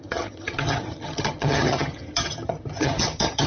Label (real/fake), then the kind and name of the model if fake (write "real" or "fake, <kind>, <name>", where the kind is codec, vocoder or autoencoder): fake, vocoder, HiFi-GAN